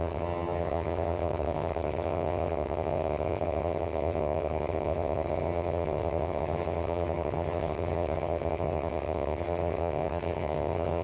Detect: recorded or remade remade